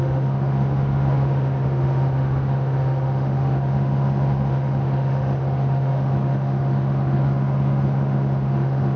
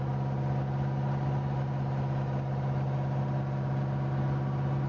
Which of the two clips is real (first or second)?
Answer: second